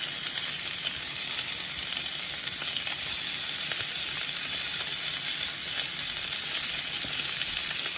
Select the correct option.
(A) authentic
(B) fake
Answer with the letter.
A